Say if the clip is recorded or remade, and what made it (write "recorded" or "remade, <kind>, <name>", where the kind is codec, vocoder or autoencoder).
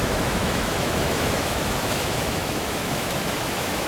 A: remade, autoencoder, DAC-VAE